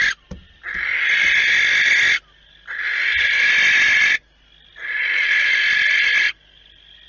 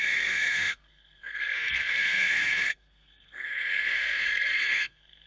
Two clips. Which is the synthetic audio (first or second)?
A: second